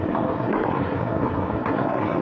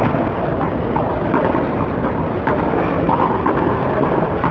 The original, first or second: second